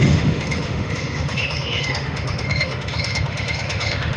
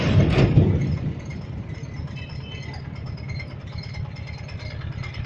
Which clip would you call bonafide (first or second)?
second